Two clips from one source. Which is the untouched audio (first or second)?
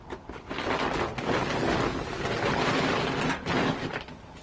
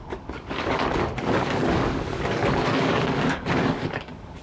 first